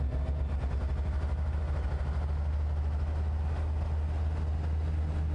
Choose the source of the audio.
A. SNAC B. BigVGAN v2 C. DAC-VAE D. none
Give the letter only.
D